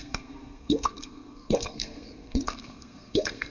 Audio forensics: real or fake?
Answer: fake